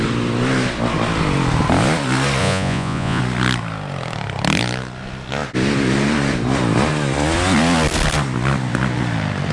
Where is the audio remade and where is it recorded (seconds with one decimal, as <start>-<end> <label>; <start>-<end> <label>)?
0.0-2.4 recorded; 2.4-3.2 remade; 3.2-9.5 recorded